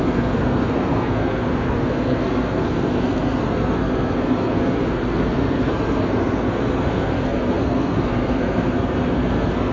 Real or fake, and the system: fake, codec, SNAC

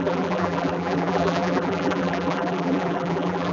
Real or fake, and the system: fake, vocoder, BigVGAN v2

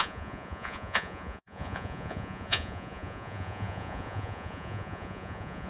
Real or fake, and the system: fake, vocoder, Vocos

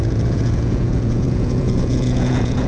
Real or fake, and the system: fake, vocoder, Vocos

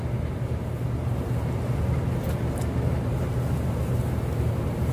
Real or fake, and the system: fake, vocoder, BigVGAN v2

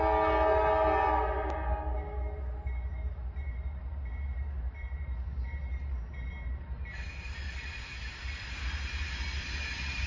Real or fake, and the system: real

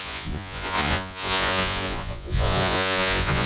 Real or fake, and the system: fake, vocoder, Vocos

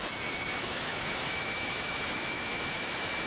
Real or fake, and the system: fake, autoencoder, DAC-VAE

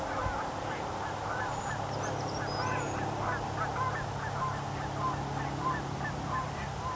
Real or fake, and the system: real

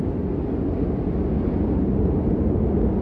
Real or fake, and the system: real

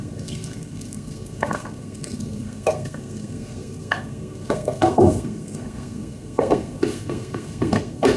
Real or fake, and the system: fake, codec, SNAC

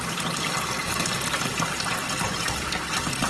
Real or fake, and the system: real